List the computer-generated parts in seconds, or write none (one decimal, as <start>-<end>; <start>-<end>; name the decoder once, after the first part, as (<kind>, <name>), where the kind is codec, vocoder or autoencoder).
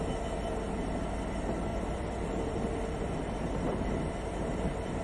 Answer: 1.7-4.0 (vocoder, BigVGAN v2)